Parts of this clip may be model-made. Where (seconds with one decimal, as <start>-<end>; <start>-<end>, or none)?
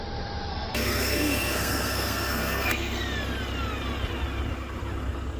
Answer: 0.5-3.0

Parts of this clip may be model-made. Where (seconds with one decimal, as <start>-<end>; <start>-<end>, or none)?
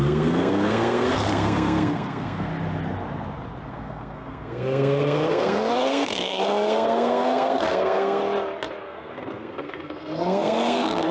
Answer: 0.0-2.5; 3.7-8.2; 8.8-11.1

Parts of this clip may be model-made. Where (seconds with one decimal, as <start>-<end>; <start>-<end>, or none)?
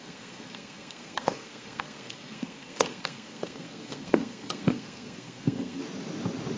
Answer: 0.0-5.8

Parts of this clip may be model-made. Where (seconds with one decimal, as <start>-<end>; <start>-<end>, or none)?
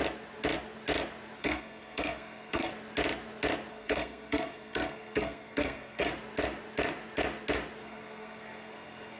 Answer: 1.4-2.7; 3.7-6.1; 7.8-9.2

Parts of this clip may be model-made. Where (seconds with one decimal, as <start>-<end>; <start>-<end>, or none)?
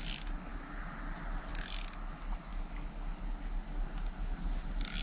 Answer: none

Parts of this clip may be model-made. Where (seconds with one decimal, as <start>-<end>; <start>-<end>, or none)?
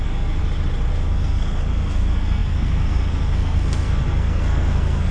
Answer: 0.0-0.4; 0.9-5.1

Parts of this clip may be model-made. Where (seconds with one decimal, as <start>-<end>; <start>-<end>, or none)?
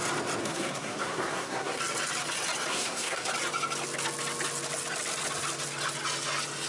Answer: 0.4-1.8; 2.7-3.3